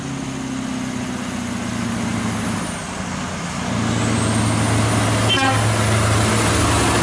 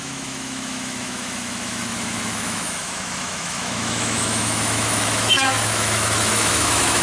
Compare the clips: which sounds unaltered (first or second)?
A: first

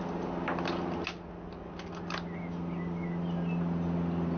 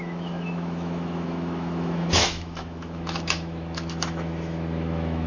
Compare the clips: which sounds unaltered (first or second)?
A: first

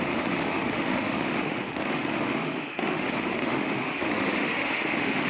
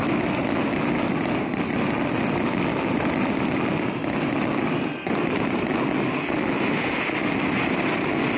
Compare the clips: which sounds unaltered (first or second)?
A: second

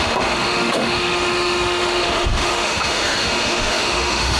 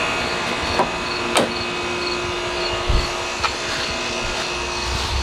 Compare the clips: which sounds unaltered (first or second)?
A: second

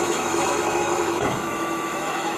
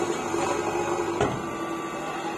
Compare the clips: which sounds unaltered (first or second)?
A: second